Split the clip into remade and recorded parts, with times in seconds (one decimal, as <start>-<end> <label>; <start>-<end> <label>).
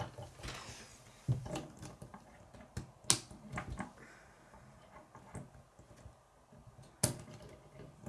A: 0.0-0.9 recorded; 0.9-2.4 remade; 2.4-8.1 recorded